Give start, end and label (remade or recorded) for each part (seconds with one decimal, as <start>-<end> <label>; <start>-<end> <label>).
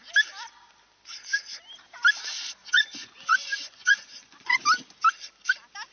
0.0-2.6 recorded; 2.6-4.6 remade; 4.6-5.9 recorded